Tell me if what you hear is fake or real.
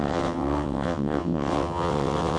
fake